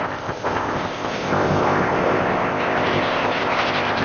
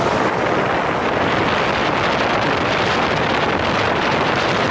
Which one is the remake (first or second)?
first